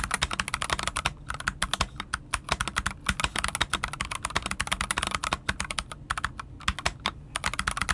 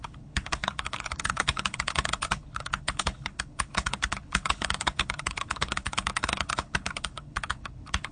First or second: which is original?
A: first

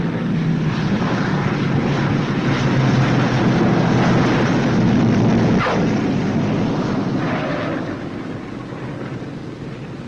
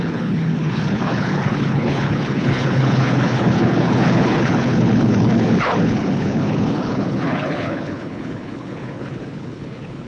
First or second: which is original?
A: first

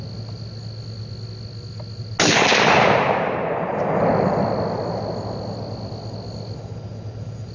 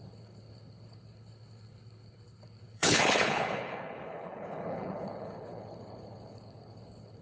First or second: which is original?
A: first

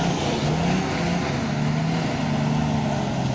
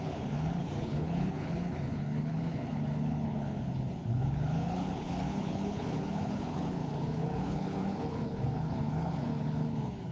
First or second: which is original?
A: first